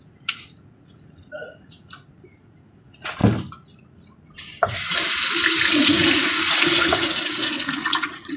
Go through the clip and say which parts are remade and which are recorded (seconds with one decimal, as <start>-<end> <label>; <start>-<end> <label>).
0.0-3.2 remade; 3.2-5.7 recorded; 5.7-8.4 remade